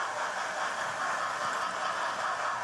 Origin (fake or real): real